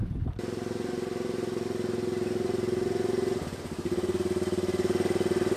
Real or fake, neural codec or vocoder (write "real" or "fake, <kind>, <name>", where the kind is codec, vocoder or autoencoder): real